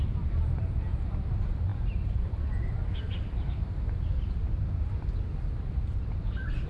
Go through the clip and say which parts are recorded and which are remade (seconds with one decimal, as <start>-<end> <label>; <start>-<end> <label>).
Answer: 0.0-4.4 remade; 4.4-5.7 recorded; 5.7-6.7 remade